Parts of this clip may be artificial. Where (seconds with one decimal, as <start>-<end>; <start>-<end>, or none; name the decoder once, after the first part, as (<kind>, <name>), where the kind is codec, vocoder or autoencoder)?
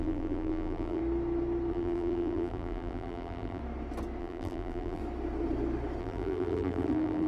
0.0-1.0 (vocoder, BigVGAN v2); 1.7-3.6; 4.2-5.0; 6.0-7.3